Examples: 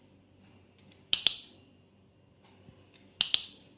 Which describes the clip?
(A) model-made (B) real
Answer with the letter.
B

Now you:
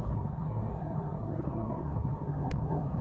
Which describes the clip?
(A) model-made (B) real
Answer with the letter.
A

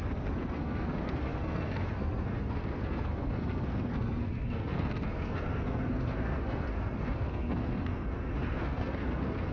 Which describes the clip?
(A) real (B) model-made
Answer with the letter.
B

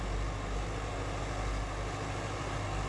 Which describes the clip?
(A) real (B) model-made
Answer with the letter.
A